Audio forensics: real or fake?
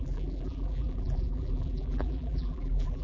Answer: fake